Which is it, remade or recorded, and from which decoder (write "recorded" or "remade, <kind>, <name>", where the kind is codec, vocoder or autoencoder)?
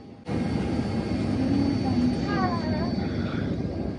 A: recorded